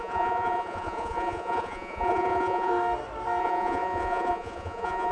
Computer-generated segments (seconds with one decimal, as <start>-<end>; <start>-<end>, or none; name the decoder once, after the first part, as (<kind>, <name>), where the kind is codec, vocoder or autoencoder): 0.0-2.7 (vocoder, Vocos); 3.4-5.1